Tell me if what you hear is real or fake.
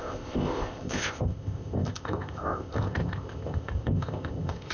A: fake